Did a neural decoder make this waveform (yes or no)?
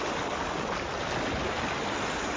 no